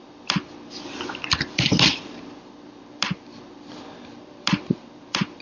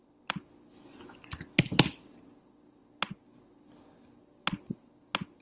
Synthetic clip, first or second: first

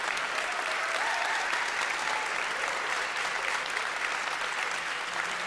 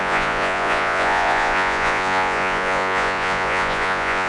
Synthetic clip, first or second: second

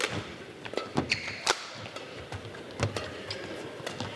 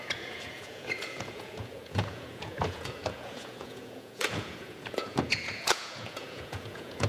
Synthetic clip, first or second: second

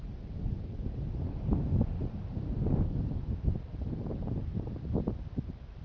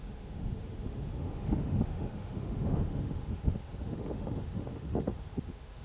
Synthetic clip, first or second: second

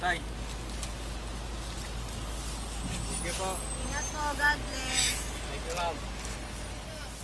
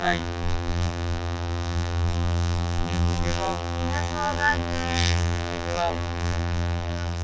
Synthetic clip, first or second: second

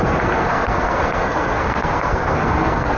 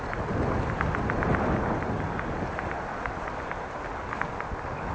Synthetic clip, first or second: first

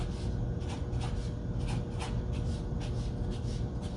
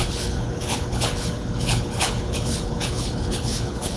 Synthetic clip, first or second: second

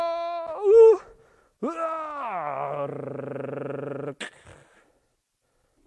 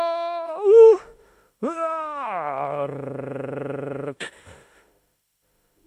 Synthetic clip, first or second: second